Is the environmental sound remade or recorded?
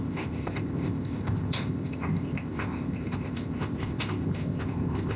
remade